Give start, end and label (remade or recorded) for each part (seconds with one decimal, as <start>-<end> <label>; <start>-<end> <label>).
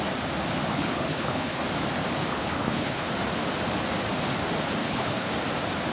0.0-0.7 recorded; 0.7-1.6 remade; 1.6-2.3 recorded; 2.3-3.1 remade; 3.1-4.8 recorded; 4.8-5.3 remade; 5.3-5.9 recorded